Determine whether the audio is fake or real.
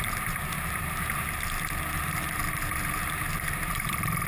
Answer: fake